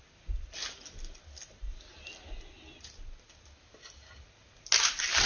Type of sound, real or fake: real